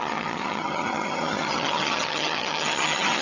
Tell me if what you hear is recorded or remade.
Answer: remade